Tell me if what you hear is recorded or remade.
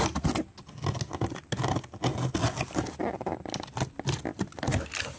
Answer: recorded